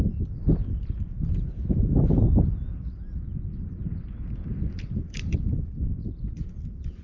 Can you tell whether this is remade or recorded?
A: recorded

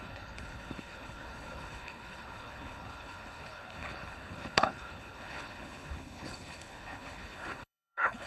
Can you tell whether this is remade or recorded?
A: remade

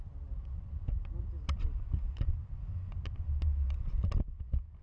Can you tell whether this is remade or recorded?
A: recorded